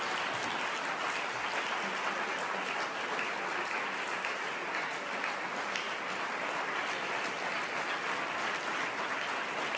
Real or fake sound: real